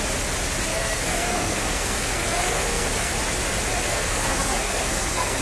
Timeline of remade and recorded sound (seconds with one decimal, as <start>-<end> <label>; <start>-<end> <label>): 0.0-0.7 recorded; 0.7-3.1 remade; 3.1-3.9 recorded; 3.9-5.4 remade